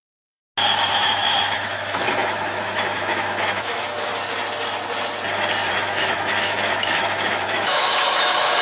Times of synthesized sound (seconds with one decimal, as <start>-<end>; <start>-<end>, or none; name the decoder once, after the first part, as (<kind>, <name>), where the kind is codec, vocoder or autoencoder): 0.0-0.4 (autoencoder, DAC-VAE); 0.9-4.1; 5.7-8.6